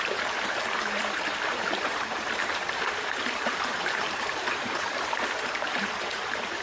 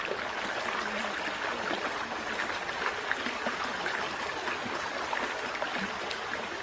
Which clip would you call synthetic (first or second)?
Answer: first